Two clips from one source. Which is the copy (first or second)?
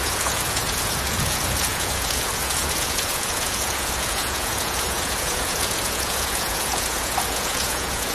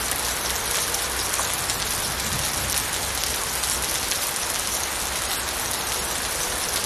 first